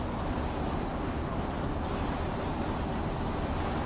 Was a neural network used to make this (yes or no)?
no